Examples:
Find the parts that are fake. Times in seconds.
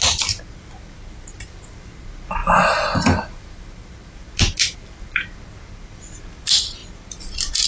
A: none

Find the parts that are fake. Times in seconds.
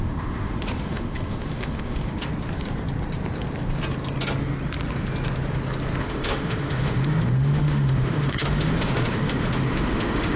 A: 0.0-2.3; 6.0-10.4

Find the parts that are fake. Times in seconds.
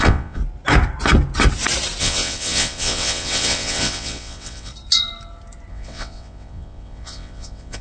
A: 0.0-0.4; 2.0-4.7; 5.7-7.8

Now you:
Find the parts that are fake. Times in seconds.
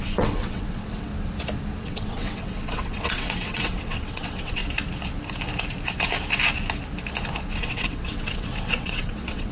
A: 0.0-1.1; 1.8-4.6; 7.6-9.5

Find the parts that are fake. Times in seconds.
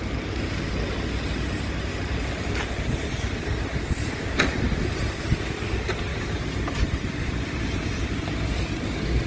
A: 1.9-2.4; 6.1-8.0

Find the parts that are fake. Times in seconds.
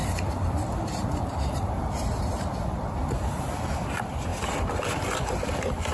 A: 0.0-3.4; 4.3-5.5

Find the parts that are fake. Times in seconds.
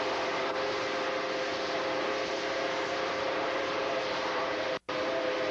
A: 1.5-4.8